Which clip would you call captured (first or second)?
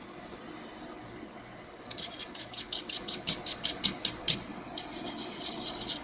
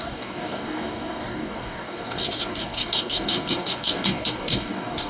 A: first